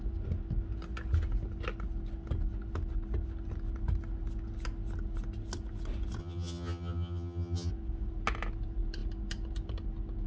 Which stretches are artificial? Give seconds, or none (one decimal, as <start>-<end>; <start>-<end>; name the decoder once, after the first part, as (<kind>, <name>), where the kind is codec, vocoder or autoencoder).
6.2-7.7 (vocoder, HiFi-GAN)